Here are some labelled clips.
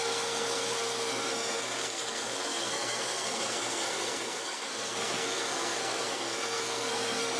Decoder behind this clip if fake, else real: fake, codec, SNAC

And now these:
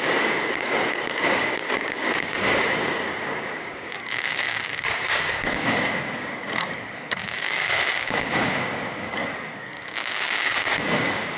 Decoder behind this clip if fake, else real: fake, codec, DAC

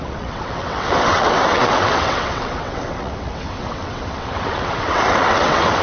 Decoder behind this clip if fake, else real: fake, vocoder, WaveNeXt